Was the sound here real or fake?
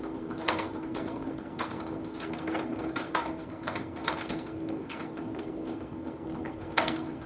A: fake